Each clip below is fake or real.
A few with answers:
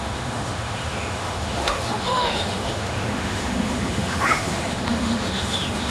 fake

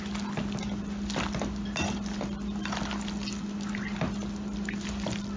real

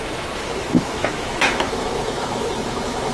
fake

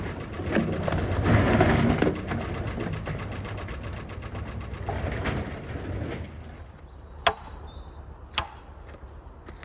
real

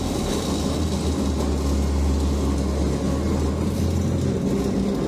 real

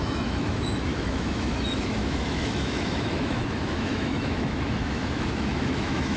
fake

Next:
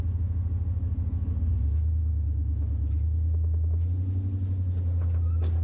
real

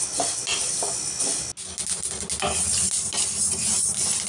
real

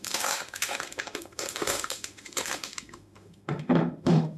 fake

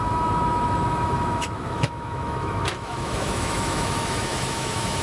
fake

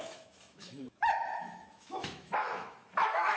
fake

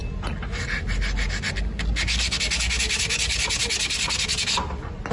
real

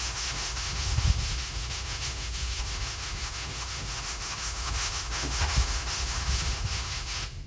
fake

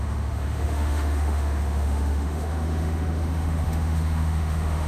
fake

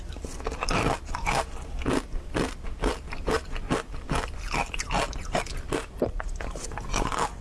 real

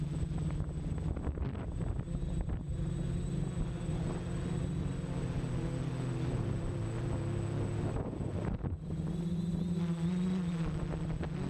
real